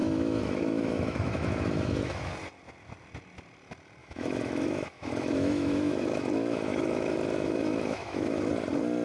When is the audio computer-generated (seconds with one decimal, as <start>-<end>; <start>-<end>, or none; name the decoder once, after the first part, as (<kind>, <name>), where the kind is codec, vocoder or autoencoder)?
0.0-2.3 (autoencoder, DAC-VAE); 4.0-8.5